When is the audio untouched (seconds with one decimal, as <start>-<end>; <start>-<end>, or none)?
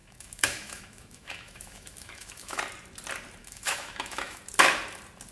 2.6-3.4; 4.4-5.3